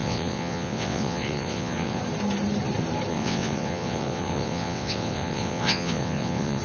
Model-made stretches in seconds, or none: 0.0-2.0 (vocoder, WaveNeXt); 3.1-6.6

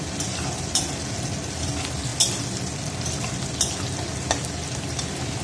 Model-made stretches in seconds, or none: none

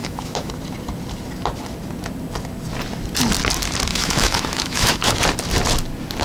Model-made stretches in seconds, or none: 0.0-0.5 (autoencoder, DAC-VAE); 3.9-5.2

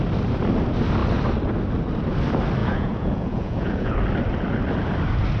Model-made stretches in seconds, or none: 2.6-3.9 (vocoder, Vocos)

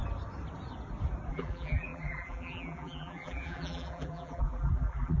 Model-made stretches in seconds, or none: 1.3-5.2 (vocoder, BigVGAN v2)

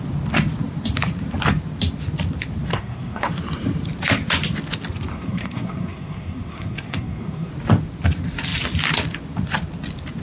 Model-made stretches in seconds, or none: 2.7-3.3 (codec, SNAC); 5.1-7.5